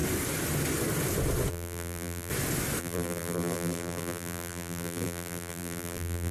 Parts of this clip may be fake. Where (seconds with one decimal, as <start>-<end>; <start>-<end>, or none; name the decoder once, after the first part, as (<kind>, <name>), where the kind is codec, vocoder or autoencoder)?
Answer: 1.5-2.3 (vocoder, BigVGAN v2); 2.8-6.3